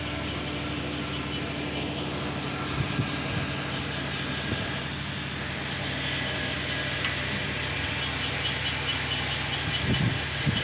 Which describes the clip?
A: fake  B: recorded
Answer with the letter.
B